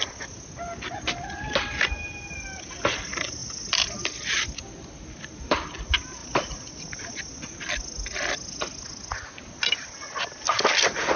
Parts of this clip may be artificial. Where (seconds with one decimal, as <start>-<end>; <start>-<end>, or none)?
none